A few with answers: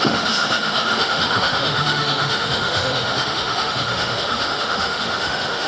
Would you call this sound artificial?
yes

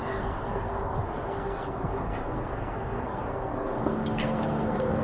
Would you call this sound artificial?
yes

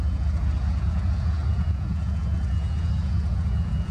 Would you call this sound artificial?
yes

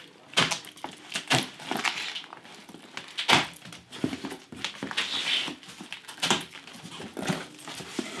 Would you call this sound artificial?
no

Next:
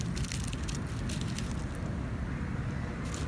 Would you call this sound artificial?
no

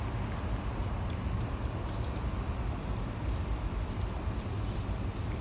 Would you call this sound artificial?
no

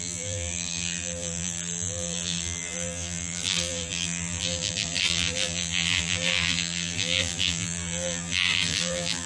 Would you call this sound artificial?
yes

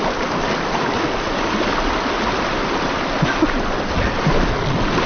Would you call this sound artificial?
no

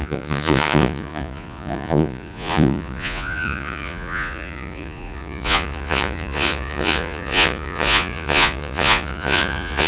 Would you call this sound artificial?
yes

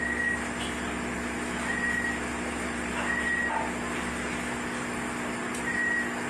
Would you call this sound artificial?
no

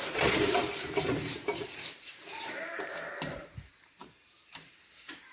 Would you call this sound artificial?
yes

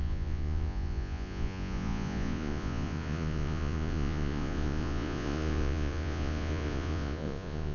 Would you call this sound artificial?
yes